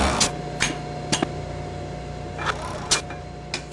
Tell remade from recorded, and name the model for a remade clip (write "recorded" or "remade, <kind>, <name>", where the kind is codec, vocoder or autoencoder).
recorded